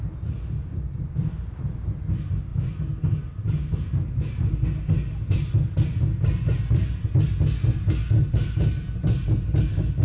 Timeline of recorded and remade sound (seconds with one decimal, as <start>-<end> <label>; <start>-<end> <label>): 0.0-10.0 recorded